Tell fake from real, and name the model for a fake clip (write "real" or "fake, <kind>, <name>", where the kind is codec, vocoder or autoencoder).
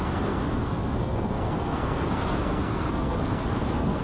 fake, codec, SNAC